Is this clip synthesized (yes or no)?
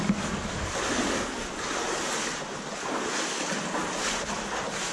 no